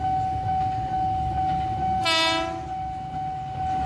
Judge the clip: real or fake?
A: real